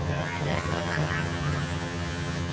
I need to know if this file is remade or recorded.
remade